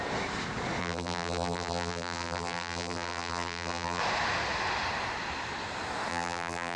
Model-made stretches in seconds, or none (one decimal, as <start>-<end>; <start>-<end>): 0.8-4.0; 6.1-6.8